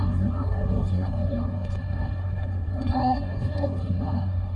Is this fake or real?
fake